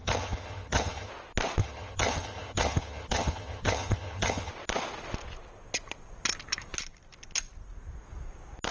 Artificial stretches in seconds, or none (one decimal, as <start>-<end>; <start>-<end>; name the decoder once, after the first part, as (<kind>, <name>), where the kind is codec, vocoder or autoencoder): 0.0-1.1 (vocoder, HiFi-GAN); 1.6-4.5